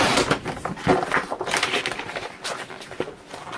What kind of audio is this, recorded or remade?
recorded